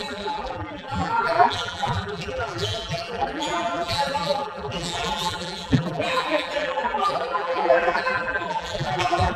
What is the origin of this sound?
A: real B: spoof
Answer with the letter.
B